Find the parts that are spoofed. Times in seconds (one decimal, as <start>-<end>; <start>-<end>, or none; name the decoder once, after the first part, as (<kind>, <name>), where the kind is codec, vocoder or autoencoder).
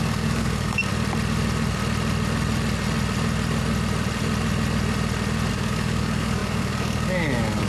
0.0-0.9 (codec, DAC); 5.5-7.7